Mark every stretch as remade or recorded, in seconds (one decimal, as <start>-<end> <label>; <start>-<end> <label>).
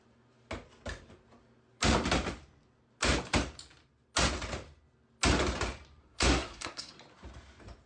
0.0-6.0 recorded; 6.0-6.9 remade; 6.9-7.9 recorded